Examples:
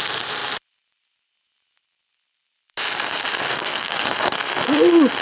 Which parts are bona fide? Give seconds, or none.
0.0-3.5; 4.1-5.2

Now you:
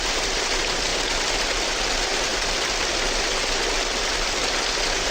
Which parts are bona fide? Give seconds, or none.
0.9-1.5